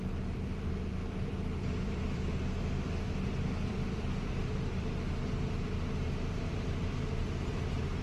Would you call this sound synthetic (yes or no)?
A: yes